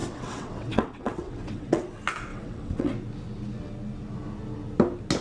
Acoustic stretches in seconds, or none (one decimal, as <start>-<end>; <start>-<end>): 1.9-2.3; 2.9-5.2